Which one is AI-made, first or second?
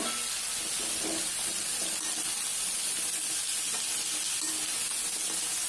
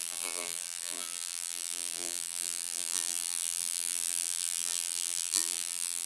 second